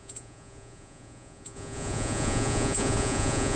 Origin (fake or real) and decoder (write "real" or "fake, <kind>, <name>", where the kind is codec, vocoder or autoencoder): fake, vocoder, Vocos